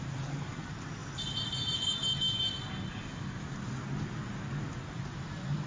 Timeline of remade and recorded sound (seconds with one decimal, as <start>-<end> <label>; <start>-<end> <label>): 0.0-5.7 recorded